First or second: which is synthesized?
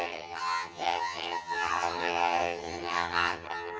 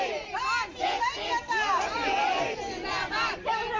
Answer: first